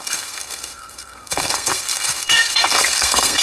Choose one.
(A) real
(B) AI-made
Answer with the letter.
B